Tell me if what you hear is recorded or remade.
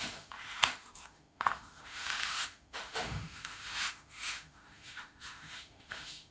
remade